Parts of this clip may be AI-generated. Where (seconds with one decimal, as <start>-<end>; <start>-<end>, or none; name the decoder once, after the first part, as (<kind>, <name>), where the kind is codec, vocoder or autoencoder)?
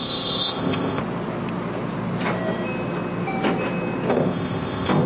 0.0-1.0 (codec, ZipCodec); 4.1-5.1